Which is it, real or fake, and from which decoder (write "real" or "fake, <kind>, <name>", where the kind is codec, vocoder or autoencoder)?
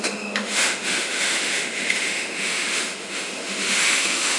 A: fake, autoencoder, DAC-VAE